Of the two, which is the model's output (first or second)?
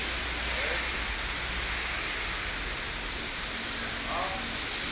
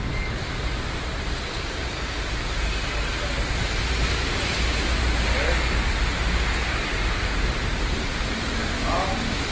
second